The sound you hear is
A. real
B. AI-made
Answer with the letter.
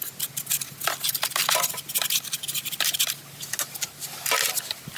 A